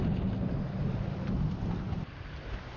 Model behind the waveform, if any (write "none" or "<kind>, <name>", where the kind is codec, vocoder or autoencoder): none